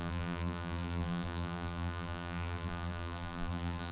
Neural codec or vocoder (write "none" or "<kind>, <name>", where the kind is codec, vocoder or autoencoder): vocoder, BigVGAN v2